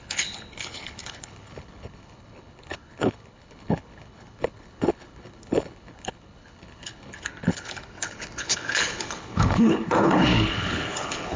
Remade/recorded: remade